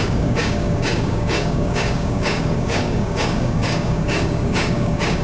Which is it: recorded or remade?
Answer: remade